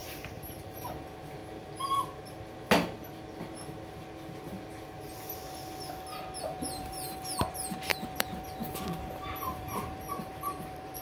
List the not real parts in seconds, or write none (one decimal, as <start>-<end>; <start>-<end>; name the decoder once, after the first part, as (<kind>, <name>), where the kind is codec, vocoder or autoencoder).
0.0-1.4 (vocoder, BigVGAN v2); 6.4-11.0